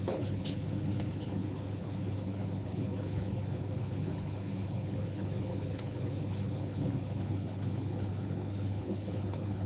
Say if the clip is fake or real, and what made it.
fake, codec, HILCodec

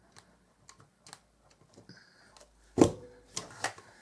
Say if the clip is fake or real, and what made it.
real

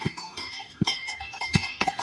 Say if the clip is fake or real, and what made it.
fake, codec, DAC